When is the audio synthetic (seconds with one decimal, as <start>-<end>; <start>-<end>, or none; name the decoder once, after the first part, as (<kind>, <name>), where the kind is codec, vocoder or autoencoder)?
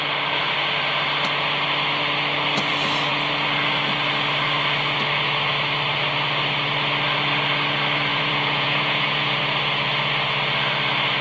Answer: 8.1-9.4 (vocoder, Vocos)